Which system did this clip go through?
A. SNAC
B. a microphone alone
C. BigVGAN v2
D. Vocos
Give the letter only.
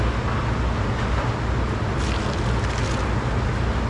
B